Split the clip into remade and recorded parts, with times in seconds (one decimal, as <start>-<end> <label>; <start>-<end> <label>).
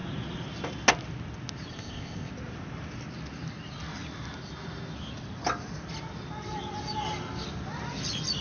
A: 0.0-1.7 recorded; 1.7-2.3 remade; 2.3-8.4 recorded